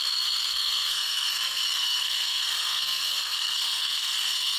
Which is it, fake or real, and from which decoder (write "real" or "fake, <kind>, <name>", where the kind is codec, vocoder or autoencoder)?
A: fake, codec, SNAC